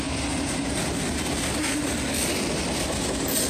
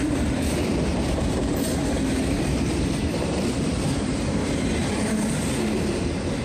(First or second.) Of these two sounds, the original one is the first